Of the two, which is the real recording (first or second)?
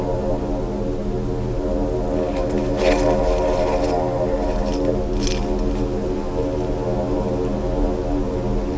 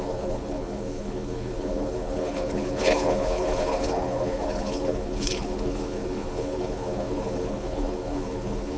first